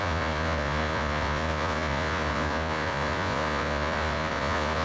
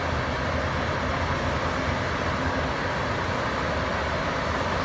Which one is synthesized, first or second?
first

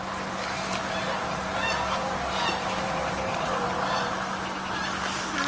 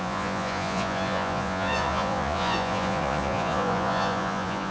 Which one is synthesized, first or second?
second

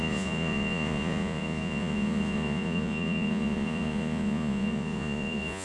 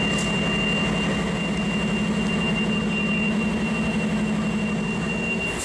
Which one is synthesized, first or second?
first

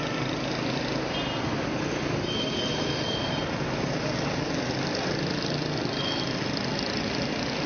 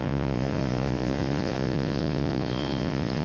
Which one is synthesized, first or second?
second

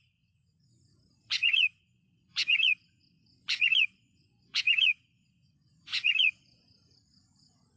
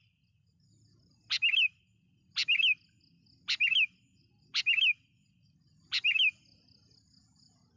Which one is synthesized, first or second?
first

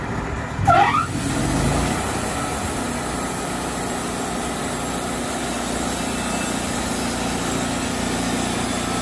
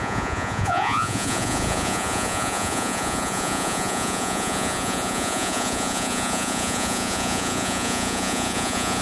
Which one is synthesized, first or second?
second